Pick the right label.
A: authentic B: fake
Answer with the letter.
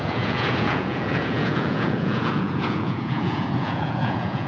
B